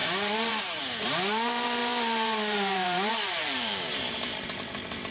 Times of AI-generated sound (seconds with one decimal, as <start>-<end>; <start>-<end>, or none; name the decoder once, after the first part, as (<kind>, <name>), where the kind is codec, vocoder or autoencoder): 0.0-5.1 (vocoder, BigVGAN v2)